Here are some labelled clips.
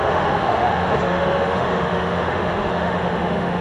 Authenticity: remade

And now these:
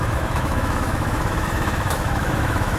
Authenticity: remade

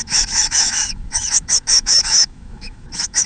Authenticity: remade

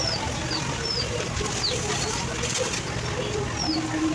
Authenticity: recorded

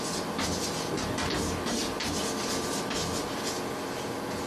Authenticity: recorded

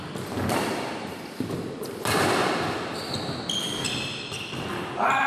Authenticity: recorded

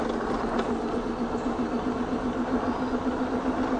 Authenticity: recorded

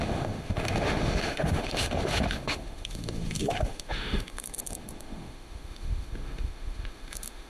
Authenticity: remade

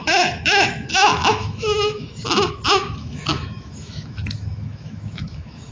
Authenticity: remade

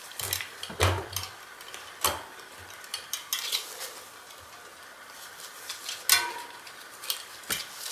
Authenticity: recorded